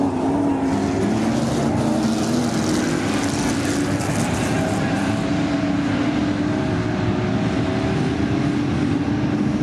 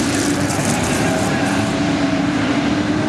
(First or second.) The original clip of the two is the first